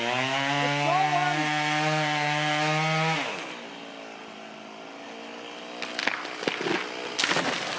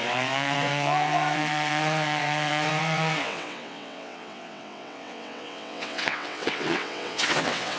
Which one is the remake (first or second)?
second